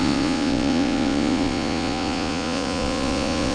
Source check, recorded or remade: remade